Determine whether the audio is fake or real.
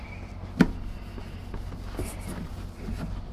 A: real